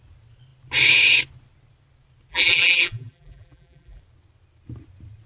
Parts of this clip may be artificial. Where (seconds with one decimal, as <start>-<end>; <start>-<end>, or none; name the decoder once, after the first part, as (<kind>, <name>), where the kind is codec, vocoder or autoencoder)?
2.3-4.0 (vocoder, BigVGAN v2)